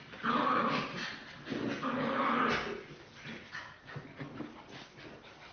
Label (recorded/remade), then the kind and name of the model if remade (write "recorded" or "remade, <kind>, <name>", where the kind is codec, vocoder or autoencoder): recorded